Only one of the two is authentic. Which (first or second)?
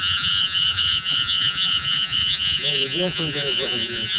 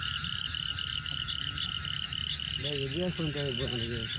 second